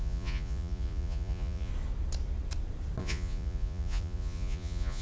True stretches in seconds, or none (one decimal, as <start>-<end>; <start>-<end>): 1.7-3.0